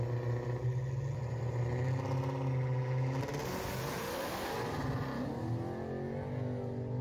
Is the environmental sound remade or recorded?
recorded